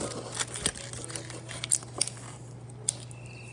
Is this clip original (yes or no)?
yes